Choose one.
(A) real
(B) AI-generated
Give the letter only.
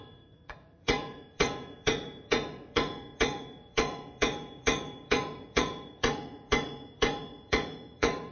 B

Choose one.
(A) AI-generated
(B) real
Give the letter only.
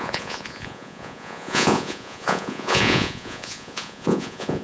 A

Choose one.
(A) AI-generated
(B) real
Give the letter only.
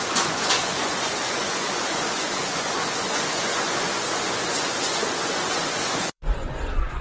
A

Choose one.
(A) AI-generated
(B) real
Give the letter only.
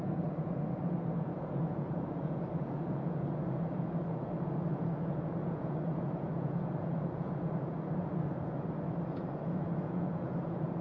A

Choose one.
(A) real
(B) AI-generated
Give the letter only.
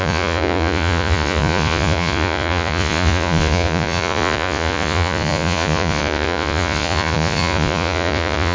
B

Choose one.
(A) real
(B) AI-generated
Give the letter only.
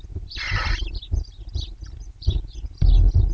A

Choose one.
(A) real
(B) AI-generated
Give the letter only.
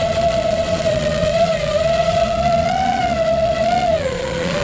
B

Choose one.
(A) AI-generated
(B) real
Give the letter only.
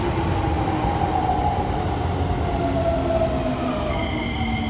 B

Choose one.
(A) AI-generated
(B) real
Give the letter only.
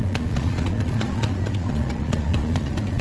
A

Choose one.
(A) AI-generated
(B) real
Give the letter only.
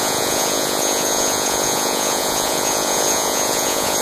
A